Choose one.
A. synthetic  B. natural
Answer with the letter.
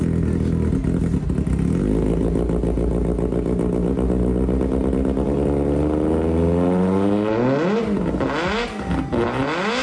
B